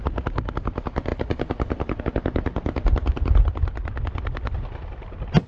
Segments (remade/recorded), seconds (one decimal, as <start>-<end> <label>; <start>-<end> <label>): 0.0-5.5 recorded